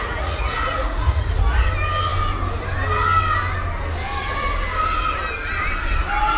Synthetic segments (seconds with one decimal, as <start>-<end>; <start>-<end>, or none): 0.0-1.4